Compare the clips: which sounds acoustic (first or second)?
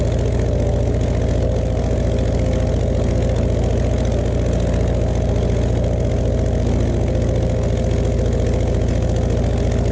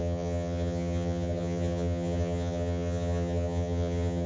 first